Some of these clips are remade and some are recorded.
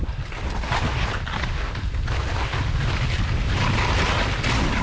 recorded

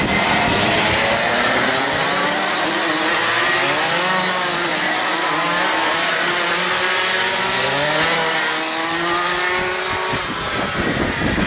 recorded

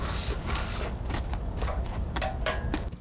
remade